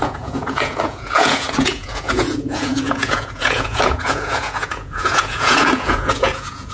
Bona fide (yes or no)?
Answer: no